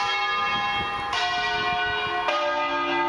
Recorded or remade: recorded